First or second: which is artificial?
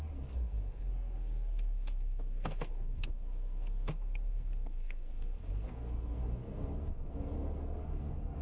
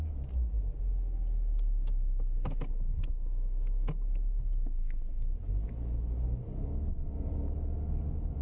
first